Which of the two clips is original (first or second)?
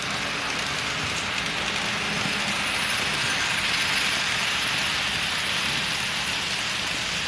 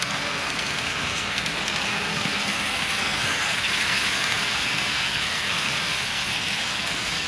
first